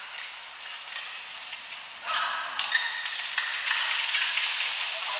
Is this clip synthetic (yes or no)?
no